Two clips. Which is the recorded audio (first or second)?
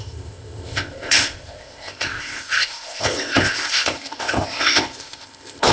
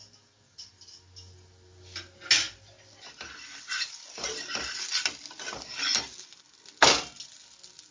second